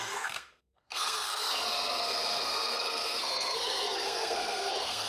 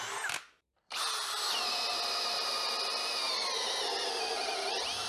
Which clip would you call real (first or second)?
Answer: second